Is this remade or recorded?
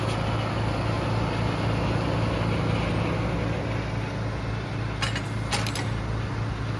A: recorded